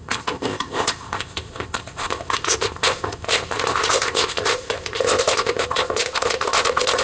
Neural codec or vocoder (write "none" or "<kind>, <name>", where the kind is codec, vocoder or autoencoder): codec, ZipCodec